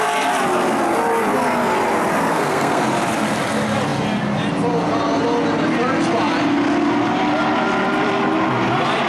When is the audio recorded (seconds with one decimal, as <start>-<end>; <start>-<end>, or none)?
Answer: 0.0-2.3; 2.8-9.1